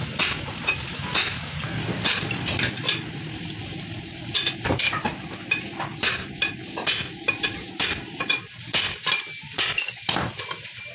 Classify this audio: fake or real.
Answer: real